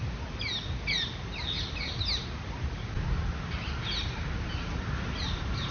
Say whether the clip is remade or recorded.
recorded